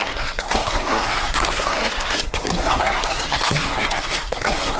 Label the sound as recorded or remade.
remade